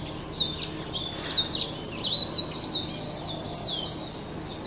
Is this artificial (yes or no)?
no